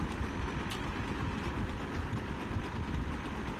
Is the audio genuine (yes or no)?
yes